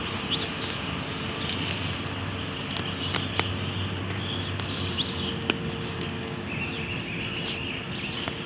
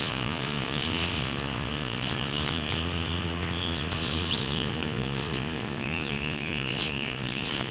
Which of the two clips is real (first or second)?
first